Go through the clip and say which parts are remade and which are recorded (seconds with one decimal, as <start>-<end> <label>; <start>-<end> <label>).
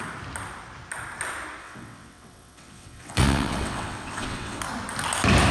0.0-1.6 recorded; 1.6-4.6 remade; 4.6-5.5 recorded